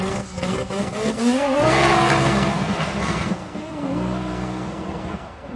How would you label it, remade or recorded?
remade